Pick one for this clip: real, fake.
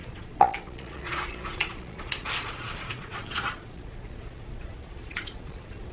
fake